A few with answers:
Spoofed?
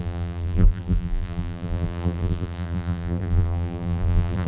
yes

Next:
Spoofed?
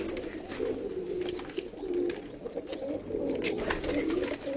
no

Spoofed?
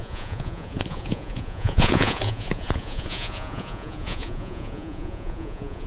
yes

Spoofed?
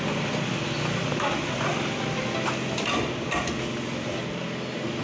no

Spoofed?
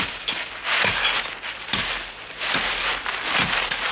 no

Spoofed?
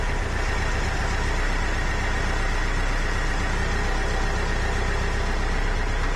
no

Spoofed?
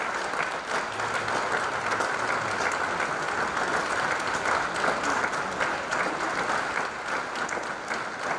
no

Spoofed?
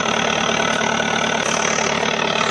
no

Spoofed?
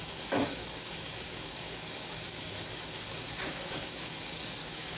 yes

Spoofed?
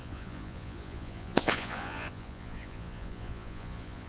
yes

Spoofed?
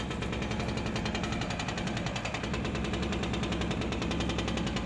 no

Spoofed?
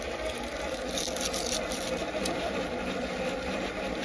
no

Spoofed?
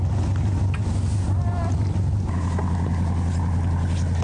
no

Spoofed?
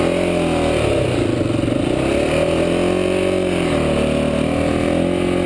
no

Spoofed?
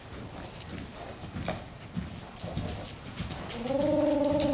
no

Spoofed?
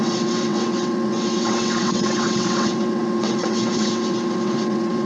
yes